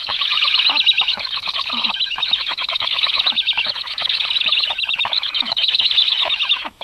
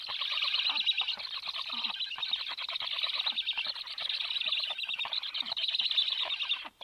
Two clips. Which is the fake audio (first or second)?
first